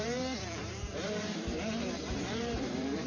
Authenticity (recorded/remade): remade